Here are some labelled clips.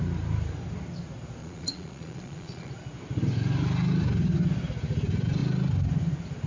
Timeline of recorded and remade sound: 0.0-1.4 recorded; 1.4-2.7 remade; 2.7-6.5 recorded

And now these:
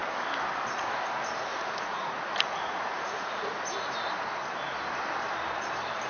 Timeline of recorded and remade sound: 0.0-1.5 recorded; 1.5-3.5 remade; 3.5-6.1 recorded

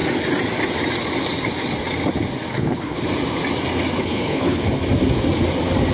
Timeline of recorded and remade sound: 0.0-2.5 recorded; 2.5-3.0 remade; 3.0-4.0 recorded; 4.0-4.6 remade; 4.6-5.9 recorded

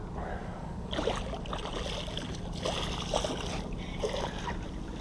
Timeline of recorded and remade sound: 0.0-0.4 recorded; 0.4-0.9 remade; 0.9-5.0 recorded

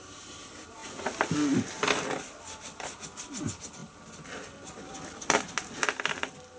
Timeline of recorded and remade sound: 0.0-6.6 recorded

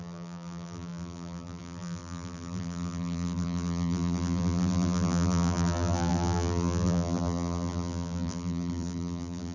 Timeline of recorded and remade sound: 0.0-9.5 remade

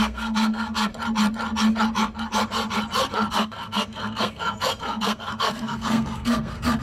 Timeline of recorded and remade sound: 0.0-0.9 remade; 0.9-3.3 recorded; 3.3-6.8 remade